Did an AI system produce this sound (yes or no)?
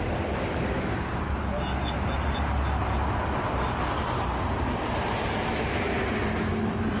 no